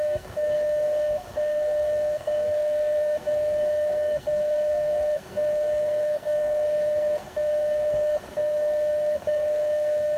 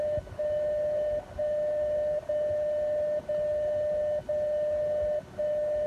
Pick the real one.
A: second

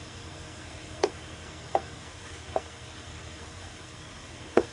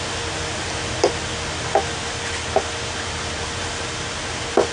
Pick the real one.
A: second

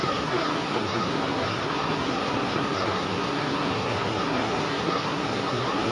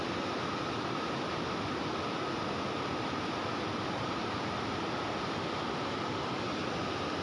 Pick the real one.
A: second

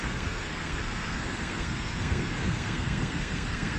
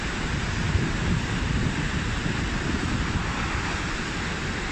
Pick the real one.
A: second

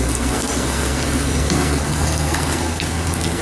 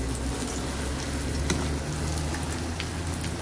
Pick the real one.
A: second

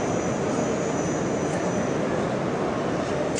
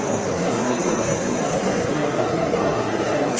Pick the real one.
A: first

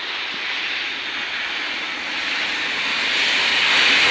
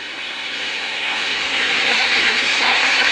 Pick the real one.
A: first